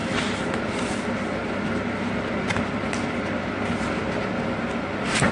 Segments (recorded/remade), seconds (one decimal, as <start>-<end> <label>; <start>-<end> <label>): 0.0-5.3 recorded